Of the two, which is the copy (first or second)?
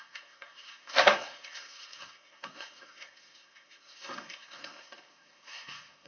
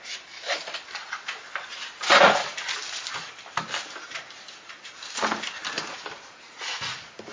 first